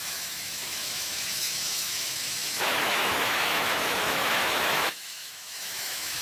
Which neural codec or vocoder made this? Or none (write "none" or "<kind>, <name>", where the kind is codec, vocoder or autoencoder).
autoencoder, DAC-VAE